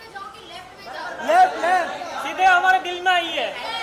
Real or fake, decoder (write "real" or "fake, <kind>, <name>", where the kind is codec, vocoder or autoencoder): real